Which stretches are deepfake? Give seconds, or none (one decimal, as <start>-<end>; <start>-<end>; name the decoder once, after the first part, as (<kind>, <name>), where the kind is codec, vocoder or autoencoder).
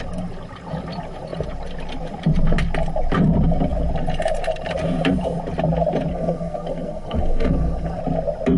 6.1-8.0 (codec, SNAC)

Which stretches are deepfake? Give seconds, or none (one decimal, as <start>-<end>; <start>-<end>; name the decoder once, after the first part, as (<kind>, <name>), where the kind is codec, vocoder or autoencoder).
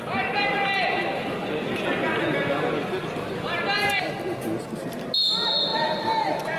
none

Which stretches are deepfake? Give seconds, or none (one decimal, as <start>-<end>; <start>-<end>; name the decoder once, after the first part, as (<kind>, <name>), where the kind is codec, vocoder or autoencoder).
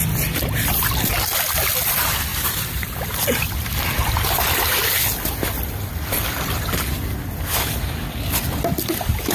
none